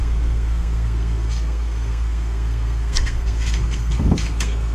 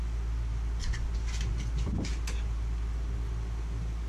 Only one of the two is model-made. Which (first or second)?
first